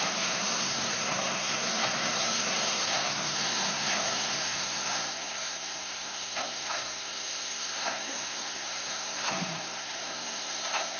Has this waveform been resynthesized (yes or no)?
yes